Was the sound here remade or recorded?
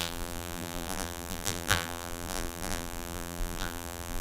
remade